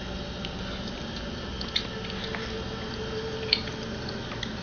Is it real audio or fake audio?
real